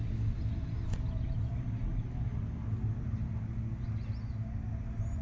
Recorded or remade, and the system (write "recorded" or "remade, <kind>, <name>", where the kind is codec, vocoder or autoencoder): recorded